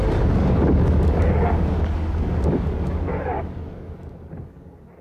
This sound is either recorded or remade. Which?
remade